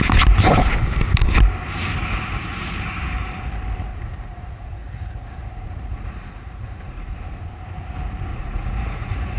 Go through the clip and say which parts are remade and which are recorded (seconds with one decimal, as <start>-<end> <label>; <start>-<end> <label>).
0.0-3.9 recorded; 3.9-7.4 remade; 7.4-8.3 recorded; 8.3-9.4 remade